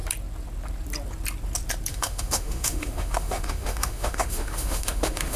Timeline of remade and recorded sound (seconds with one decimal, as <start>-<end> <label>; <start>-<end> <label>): 0.0-1.9 recorded; 1.9-5.4 remade